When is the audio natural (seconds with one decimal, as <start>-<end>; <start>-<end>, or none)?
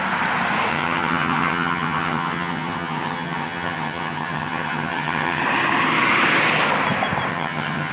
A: 0.0-0.7; 5.4-7.3